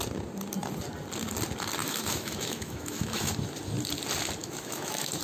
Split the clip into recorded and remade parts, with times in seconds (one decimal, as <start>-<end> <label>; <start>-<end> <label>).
0.0-1.8 recorded; 1.8-3.3 remade; 3.3-4.4 recorded; 4.4-5.2 remade